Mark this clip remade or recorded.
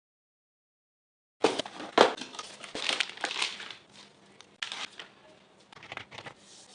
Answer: recorded